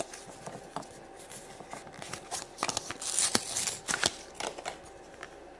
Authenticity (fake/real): real